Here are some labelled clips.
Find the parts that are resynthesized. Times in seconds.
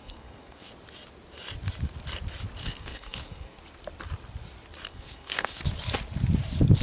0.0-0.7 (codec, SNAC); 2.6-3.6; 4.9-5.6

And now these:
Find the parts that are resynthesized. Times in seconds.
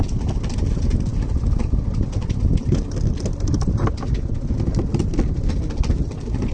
none